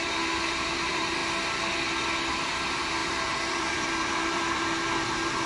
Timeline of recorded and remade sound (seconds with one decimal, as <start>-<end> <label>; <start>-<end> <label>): 0.0-1.2 remade; 1.2-2.3 recorded; 2.3-5.5 remade